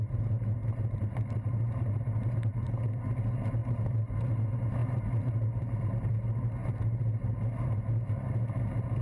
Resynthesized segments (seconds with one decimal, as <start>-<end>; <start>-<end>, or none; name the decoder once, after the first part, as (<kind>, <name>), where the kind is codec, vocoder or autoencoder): 0.6-2.7 (vocoder, BigVGAN v2); 3.6-4.3; 4.8-6.1; 6.6-7.7

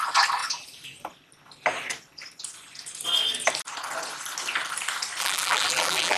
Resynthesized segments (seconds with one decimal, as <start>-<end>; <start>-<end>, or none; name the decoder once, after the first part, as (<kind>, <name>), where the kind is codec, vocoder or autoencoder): 5.2-6.2 (vocoder, BigVGAN v2)

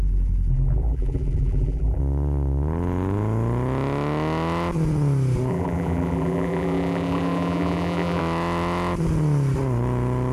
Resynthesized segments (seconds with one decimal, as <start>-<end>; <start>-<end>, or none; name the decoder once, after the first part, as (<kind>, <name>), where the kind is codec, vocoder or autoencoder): 0.5-2.0 (vocoder, BigVGAN v2); 5.5-8.2

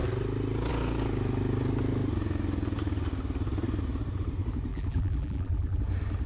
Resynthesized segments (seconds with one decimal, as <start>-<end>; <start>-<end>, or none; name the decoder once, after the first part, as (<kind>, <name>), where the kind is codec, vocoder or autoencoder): 4.7-5.8 (vocoder, BigVGAN v2)

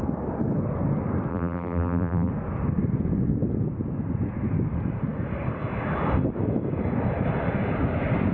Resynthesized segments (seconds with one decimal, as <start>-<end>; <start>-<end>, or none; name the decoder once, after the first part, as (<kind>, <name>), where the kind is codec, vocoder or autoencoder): 1.3-2.3 (vocoder, BigVGAN v2)

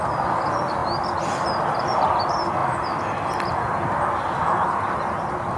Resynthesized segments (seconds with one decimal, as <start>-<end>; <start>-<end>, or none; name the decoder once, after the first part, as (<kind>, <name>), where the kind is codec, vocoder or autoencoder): none